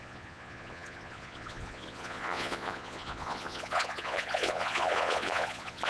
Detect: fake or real fake